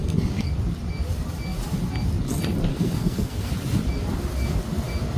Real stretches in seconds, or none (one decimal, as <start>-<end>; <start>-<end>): 0.5-2.7; 3.5-5.2